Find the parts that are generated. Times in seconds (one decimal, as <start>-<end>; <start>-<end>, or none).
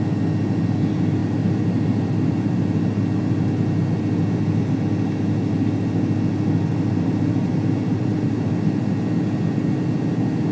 1.2-3.0; 6.7-8.5